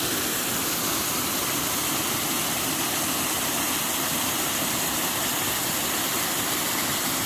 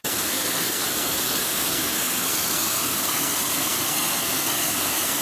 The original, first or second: first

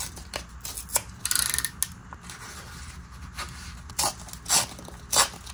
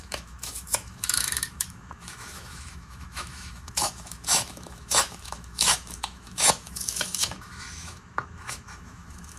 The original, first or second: first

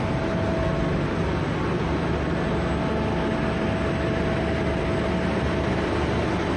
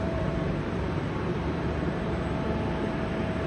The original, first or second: first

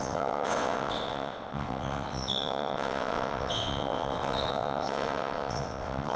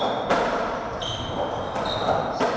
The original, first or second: second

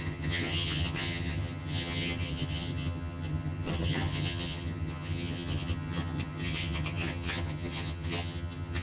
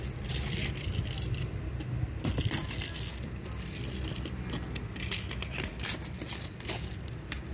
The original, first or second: second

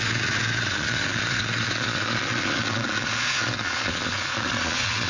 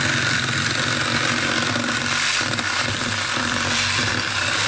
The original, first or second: second